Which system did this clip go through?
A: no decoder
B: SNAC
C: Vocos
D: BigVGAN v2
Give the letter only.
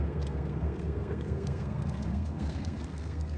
B